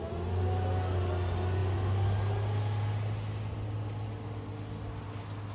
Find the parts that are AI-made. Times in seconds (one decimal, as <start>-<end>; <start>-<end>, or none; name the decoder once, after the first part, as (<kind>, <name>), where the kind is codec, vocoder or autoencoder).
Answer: none